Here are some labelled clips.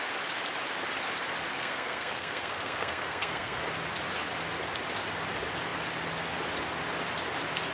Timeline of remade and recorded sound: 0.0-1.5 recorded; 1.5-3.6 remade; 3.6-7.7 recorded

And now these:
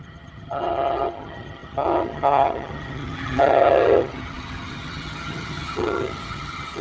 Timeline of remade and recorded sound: 0.0-6.8 remade

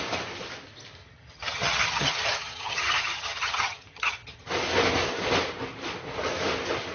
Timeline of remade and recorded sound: 0.0-1.0 recorded; 1.0-4.5 remade; 4.5-6.9 recorded

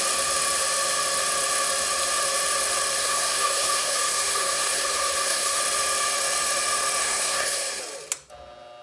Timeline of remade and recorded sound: 0.0-3.0 recorded; 3.0-5.6 remade; 5.6-7.0 recorded; 7.0-7.8 remade; 7.8-8.8 recorded

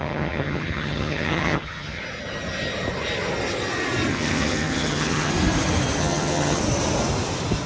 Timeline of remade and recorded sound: 0.0-2.0 remade; 2.0-4.1 recorded; 4.1-5.3 remade; 5.3-6.0 recorded; 6.0-6.6 remade; 6.6-7.7 recorded

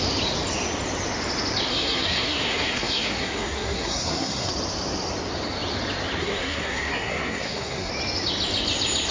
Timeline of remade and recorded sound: 0.0-1.7 recorded; 1.7-4.5 remade; 4.5-6.2 recorded; 6.2-7.9 remade; 7.9-9.1 recorded

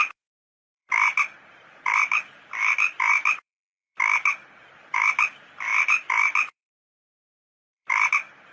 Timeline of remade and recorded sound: 0.0-5.1 remade; 5.1-5.7 recorded; 5.7-8.1 remade; 8.1-8.5 recorded